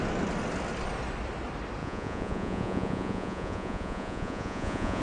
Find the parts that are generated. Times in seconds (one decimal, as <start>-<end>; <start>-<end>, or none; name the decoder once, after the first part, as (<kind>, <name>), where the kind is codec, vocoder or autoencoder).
1.8-5.0 (vocoder, Vocos)